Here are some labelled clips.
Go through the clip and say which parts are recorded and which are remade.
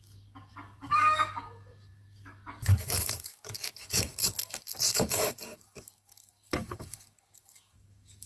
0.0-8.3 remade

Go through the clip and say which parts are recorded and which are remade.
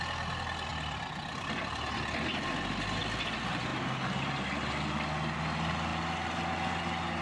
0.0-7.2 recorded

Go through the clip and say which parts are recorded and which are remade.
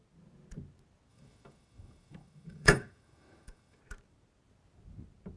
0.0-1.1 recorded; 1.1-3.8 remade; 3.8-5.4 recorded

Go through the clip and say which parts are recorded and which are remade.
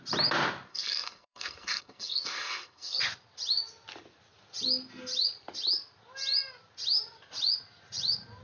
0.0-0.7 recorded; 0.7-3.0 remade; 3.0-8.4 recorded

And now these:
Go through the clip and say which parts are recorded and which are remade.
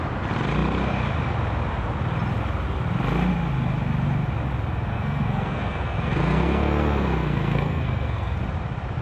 0.0-4.9 recorded; 4.9-8.4 remade; 8.4-9.0 recorded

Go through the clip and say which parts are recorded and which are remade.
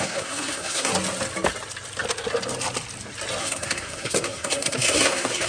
0.0-0.9 remade; 0.9-3.4 recorded; 3.4-5.5 remade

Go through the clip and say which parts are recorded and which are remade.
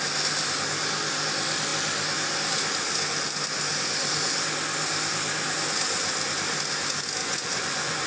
0.0-7.2 recorded; 7.2-8.1 remade